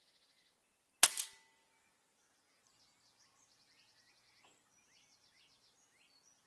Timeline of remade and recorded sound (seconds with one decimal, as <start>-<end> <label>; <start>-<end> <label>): 0.0-6.5 recorded